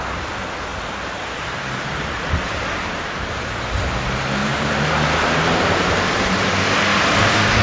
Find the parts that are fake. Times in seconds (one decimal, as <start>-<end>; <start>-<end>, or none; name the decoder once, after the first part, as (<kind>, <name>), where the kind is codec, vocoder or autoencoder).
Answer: 0.7-3.5 (vocoder, BigVGAN v2); 4.4-6.5; 6.9-7.6